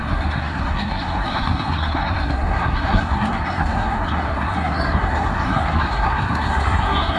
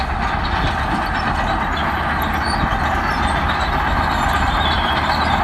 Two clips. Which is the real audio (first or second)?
second